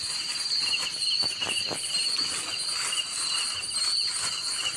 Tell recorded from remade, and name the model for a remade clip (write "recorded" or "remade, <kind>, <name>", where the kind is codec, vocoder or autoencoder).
recorded